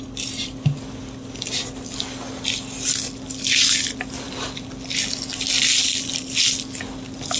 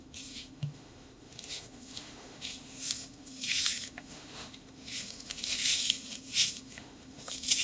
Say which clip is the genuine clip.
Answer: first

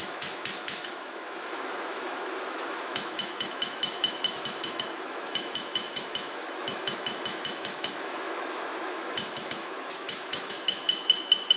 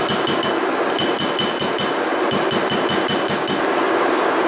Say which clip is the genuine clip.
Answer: second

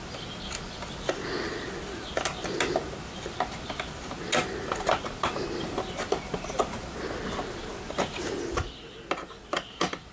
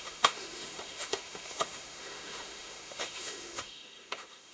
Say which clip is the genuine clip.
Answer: first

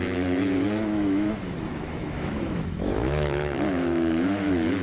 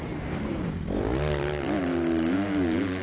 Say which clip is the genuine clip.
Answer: second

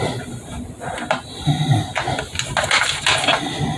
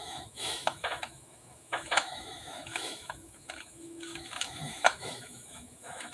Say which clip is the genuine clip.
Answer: first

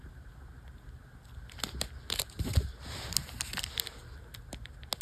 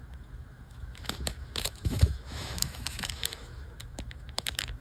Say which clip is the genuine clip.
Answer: first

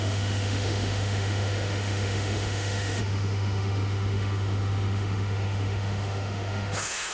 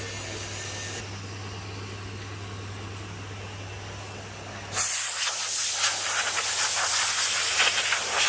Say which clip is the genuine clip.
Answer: second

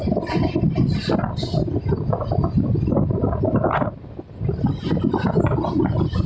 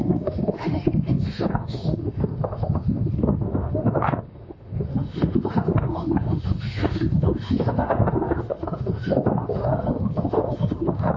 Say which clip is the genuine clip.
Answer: first